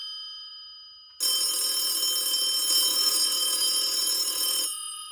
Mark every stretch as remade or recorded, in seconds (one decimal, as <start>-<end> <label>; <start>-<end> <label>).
0.0-2.9 recorded; 2.9-5.1 remade